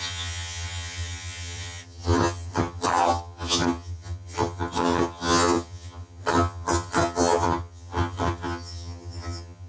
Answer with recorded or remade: remade